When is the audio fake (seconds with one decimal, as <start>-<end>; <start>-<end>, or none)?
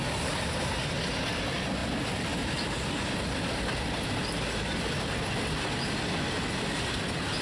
0.0-0.8